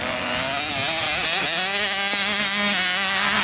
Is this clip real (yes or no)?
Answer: yes